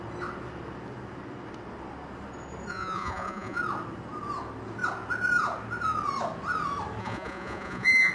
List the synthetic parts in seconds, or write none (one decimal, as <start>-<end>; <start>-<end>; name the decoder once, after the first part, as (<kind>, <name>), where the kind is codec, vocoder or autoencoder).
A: 2.7-3.6 (vocoder, Vocos); 7.0-8.1